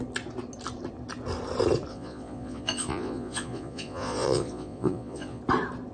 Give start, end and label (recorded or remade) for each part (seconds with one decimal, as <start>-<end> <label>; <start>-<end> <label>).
0.0-1.9 recorded; 1.9-5.4 remade; 5.4-5.9 recorded